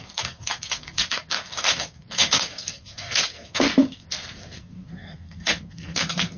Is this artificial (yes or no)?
yes